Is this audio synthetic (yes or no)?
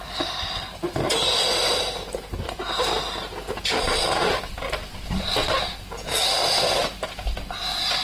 no